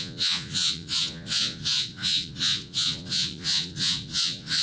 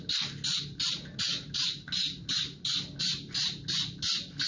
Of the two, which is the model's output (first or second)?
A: first